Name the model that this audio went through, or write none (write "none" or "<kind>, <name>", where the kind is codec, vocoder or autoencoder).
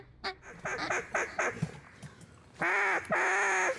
none